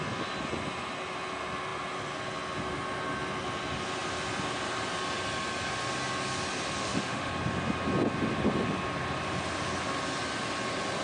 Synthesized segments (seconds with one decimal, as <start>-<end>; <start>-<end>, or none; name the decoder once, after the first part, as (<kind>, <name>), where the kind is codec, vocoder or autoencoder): 6.8-7.3 (autoencoder, DAC-VAE)